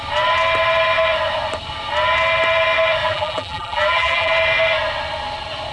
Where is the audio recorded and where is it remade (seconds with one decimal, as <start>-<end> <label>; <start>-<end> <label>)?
0.0-3.0 recorded; 3.0-4.3 remade; 4.3-5.7 recorded